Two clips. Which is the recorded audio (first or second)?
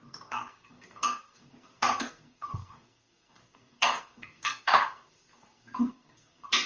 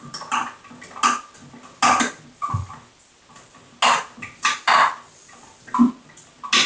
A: second